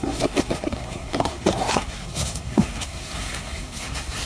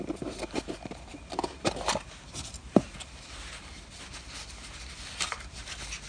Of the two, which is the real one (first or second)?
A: second